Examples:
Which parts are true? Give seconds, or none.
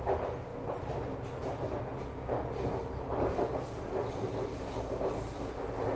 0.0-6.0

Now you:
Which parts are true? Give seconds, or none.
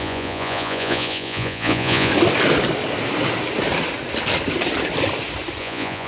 2.1-5.6